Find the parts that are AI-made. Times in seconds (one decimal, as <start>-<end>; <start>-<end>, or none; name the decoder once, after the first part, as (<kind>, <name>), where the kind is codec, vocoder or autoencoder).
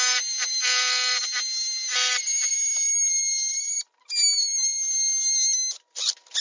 none